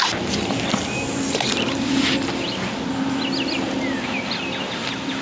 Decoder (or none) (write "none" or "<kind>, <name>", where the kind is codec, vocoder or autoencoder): none